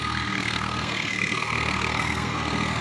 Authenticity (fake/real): fake